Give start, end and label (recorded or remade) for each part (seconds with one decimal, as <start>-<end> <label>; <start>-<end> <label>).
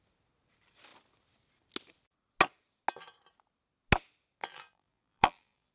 0.0-4.4 recorded; 4.4-5.7 remade